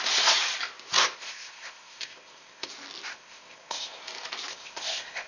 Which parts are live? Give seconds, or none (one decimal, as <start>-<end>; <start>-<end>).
0.0-1.0; 2.7-3.1; 4.0-4.5